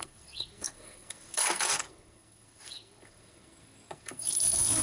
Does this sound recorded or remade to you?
remade